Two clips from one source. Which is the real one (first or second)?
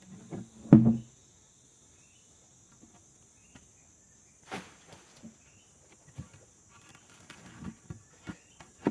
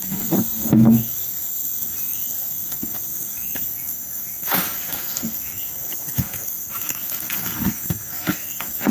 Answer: first